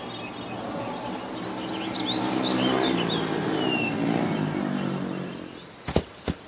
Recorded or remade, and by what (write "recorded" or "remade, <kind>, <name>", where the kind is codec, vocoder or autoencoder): recorded